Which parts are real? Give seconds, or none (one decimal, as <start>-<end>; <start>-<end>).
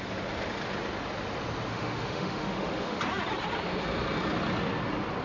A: 0.0-1.7; 3.0-5.2